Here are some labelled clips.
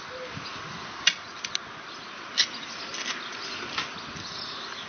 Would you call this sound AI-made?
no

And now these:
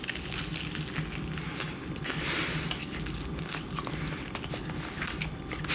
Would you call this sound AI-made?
no